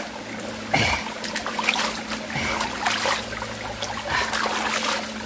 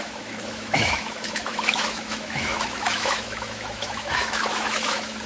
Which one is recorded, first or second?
first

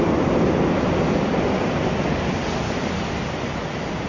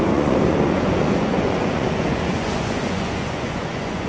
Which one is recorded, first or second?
first